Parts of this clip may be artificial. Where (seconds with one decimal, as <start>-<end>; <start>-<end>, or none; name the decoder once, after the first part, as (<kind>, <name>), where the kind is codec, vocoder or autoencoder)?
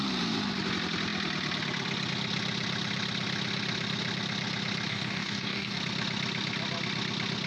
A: 4.9-5.8 (codec, DAC)